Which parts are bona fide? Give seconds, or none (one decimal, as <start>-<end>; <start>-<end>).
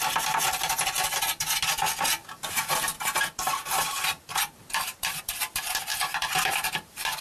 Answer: 0.0-2.2; 5.2-5.9